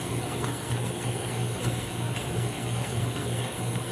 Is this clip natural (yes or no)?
no